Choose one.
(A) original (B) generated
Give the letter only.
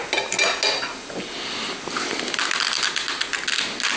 A